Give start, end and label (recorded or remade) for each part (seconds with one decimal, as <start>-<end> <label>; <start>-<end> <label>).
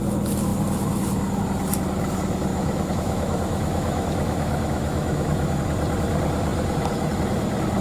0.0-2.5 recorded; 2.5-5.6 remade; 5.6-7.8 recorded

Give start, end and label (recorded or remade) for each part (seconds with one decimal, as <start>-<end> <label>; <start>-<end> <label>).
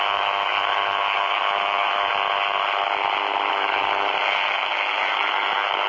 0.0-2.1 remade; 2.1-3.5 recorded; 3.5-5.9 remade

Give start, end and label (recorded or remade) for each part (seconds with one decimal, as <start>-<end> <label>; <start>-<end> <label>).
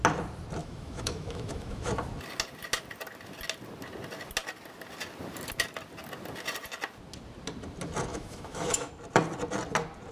0.0-0.6 recorded; 0.6-1.9 remade; 1.9-8.1 recorded; 8.1-8.9 remade; 8.9-10.1 recorded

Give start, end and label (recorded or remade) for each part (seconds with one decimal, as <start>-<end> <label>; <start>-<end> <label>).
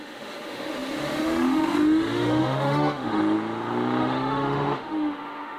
0.0-3.2 remade; 3.2-4.0 recorded; 4.0-5.6 remade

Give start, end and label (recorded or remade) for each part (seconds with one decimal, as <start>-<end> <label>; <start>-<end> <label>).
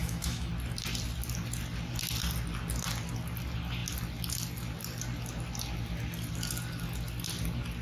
0.0-0.5 remade; 0.5-7.8 recorded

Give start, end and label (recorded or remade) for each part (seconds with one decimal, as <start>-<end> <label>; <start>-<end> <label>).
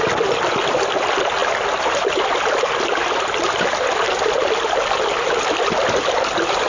0.0-6.7 recorded